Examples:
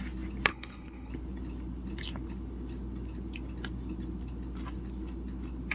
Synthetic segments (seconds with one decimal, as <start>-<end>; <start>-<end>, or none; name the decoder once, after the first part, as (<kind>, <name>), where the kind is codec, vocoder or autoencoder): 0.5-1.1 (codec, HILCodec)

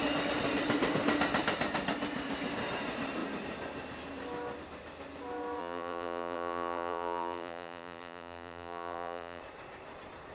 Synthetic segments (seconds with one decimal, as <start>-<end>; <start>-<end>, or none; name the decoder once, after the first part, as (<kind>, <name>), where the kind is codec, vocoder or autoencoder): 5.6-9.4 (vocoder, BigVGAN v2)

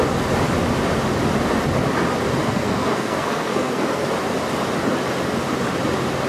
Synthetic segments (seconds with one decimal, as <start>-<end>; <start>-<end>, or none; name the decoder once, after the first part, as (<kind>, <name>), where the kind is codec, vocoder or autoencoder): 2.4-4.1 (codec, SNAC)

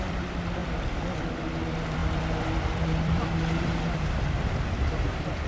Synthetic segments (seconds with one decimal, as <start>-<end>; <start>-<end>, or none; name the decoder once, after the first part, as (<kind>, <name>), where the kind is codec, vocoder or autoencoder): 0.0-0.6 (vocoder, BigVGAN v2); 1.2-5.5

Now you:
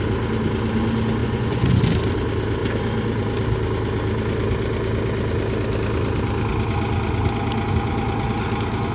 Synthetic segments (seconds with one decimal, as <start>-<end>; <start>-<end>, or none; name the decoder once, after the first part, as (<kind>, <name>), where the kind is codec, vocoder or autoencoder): 1.2-1.8 (vocoder, Vocos)